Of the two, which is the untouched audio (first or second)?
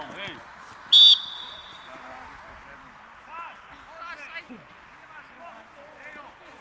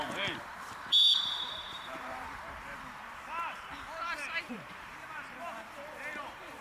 first